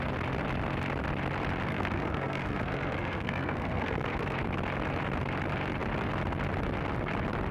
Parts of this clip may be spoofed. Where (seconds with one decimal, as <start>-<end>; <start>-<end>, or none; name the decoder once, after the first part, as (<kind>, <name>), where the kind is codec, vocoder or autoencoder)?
1.7-4.4 (codec, SNAC)